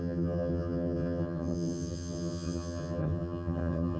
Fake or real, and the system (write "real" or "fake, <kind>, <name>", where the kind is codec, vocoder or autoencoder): fake, vocoder, HiFi-GAN